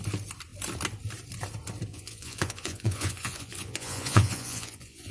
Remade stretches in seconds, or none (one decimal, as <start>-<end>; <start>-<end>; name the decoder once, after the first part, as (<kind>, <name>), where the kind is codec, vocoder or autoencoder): 1.9-5.1 (vocoder, Vocos)